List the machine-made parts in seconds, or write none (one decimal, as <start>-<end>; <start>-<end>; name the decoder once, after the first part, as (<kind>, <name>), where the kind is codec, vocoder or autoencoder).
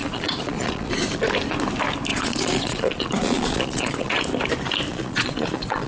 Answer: 0.0-0.9 (vocoder, Vocos); 2.1-4.2; 4.9-5.9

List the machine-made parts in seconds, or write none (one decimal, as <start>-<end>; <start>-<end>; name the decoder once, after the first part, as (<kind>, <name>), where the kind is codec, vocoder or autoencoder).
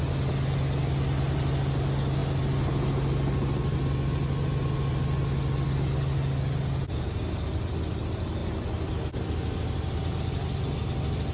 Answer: none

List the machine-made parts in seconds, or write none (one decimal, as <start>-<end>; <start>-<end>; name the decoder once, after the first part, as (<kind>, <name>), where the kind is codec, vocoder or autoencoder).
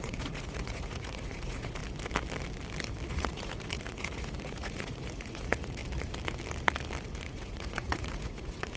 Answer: 0.0-1.8 (vocoder, Vocos); 3.1-5.8; 7.2-8.8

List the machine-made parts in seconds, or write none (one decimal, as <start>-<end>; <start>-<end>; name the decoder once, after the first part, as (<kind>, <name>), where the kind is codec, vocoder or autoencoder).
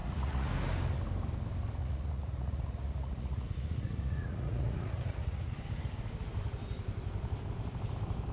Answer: 0.0-0.5 (vocoder, Vocos); 1.8-5.5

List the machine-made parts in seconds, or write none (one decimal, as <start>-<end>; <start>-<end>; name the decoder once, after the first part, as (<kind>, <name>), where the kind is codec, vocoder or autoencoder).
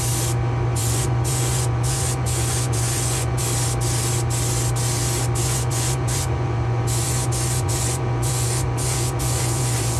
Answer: 0.8-3.4 (vocoder, Vocos); 5.4-10.0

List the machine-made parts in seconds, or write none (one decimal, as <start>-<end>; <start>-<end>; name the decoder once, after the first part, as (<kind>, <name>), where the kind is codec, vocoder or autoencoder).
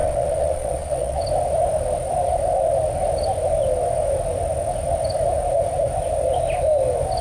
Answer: 0.0-1.2 (vocoder, Vocos)